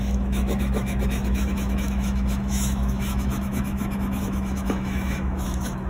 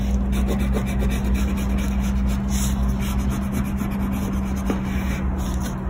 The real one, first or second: second